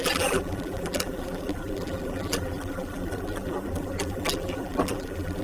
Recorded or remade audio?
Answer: remade